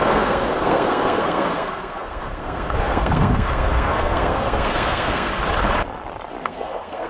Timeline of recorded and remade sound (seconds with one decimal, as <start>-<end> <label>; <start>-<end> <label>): 0.0-5.3 remade; 5.3-6.4 recorded; 6.4-7.1 remade